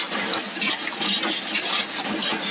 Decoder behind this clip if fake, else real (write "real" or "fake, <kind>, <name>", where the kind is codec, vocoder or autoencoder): real